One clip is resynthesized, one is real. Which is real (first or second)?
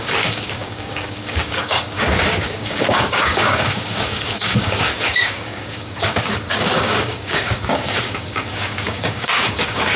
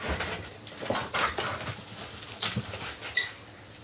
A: second